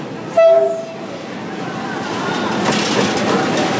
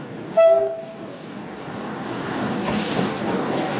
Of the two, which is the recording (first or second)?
first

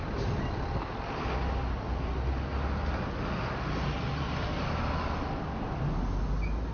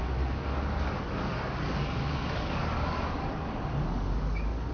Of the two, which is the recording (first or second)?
first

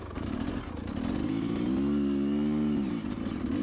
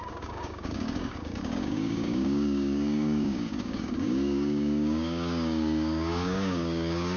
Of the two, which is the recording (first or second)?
first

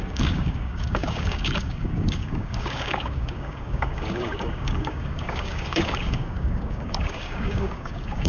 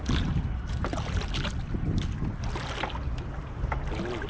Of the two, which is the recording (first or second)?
second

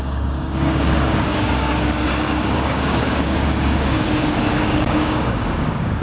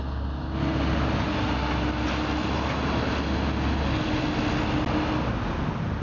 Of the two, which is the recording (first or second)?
second